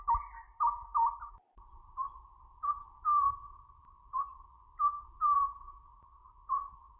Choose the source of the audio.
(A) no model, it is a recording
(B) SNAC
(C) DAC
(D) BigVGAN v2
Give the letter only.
D